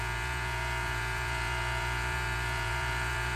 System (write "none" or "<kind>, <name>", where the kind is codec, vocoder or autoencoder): vocoder, Vocos